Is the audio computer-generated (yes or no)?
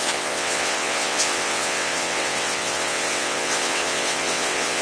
yes